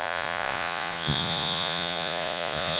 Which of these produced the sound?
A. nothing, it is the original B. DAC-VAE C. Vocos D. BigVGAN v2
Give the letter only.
C